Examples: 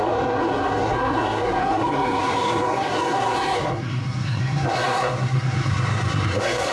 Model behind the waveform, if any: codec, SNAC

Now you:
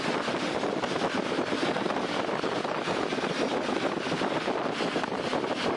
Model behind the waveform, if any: none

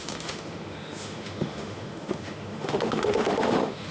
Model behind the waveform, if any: autoencoder, DAC-VAE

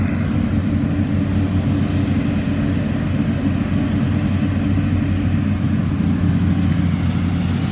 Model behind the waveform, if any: none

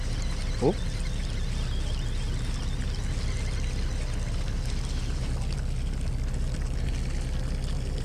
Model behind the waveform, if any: none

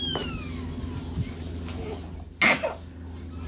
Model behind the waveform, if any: none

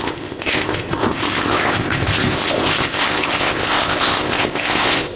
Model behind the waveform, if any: codec, ZipCodec